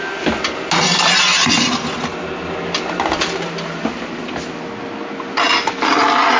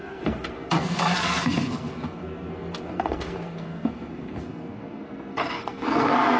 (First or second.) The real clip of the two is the first